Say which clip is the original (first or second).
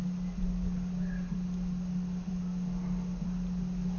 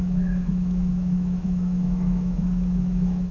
first